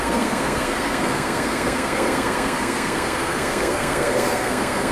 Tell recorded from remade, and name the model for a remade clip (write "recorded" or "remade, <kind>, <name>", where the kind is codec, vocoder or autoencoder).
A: remade, codec, SNAC